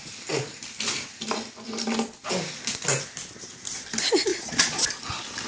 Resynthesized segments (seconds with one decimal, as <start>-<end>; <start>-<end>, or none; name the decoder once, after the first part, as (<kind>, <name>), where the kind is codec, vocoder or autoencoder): 4.3-4.9 (vocoder, Vocos)